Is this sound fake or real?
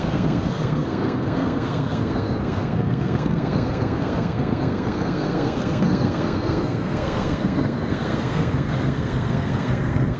fake